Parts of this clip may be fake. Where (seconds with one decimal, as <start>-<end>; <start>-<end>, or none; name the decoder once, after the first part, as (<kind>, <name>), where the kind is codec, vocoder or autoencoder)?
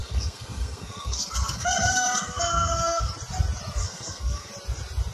0.0-3.1 (codec, SNAC); 3.8-4.5